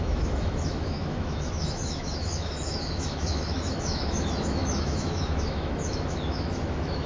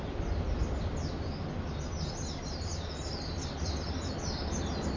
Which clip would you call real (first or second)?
second